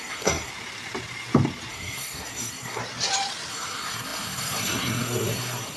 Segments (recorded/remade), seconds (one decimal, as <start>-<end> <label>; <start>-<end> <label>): 0.0-0.5 remade; 0.5-1.7 recorded; 1.7-2.8 remade; 2.8-3.5 recorded; 3.5-5.8 remade